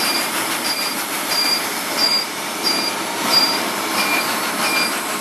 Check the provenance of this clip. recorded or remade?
remade